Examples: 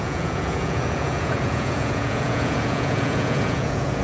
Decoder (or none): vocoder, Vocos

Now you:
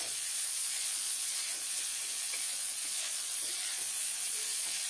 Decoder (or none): vocoder, Vocos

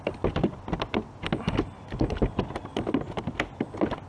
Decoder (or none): none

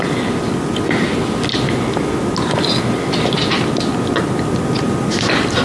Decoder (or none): none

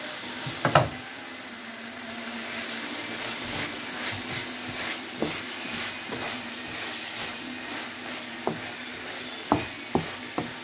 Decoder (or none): none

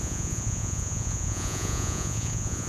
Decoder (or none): vocoder, Vocos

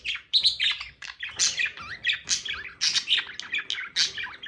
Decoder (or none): none